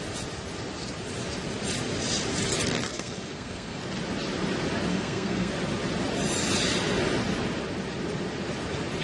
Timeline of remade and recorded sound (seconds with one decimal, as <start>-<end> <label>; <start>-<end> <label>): 0.0-2.9 recorded; 2.9-3.8 remade; 3.8-4.9 recorded; 4.9-5.5 remade; 5.5-9.0 recorded